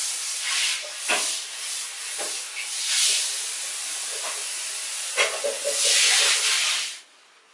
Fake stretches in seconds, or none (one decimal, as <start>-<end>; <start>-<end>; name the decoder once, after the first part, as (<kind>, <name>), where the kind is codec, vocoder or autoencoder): 0.0-1.5 (vocoder, BigVGAN v2)